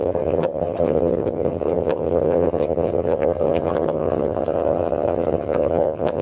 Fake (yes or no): yes